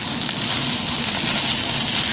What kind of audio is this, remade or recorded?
recorded